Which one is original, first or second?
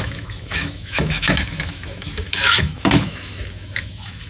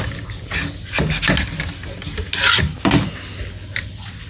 second